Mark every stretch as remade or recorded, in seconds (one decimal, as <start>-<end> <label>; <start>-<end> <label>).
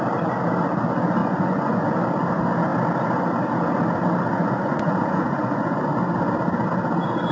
0.0-1.2 recorded; 1.2-1.9 remade; 1.9-4.3 recorded; 4.3-5.9 remade; 5.9-7.3 recorded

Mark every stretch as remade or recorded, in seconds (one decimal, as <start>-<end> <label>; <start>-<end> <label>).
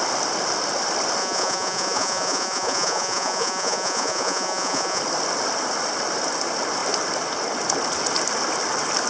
0.0-1.2 recorded; 1.2-5.0 remade; 5.0-9.1 recorded